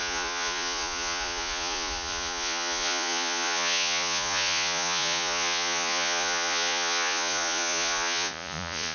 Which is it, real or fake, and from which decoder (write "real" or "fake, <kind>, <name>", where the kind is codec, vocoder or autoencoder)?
fake, vocoder, Vocos